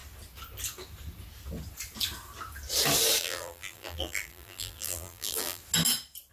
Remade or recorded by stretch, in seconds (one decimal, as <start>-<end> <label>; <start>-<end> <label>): 0.0-3.2 recorded; 3.2-5.6 remade; 5.6-6.3 recorded